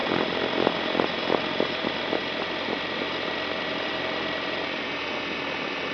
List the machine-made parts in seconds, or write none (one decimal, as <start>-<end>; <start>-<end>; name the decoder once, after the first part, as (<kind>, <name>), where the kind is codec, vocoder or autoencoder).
none